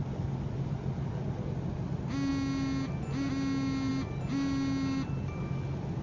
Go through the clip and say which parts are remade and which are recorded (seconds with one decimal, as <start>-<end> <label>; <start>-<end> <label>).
0.0-6.0 recorded